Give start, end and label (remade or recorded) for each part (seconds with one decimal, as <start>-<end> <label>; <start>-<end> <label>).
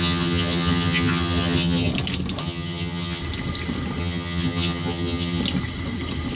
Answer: 0.0-1.9 remade; 1.9-2.4 recorded; 2.4-3.2 remade; 3.2-4.0 recorded; 4.0-5.4 remade; 5.4-6.4 recorded